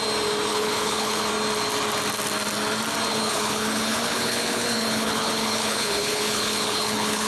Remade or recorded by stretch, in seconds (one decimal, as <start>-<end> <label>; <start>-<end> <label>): 0.0-0.5 recorded; 0.5-1.3 remade; 1.3-3.1 recorded; 3.1-7.3 remade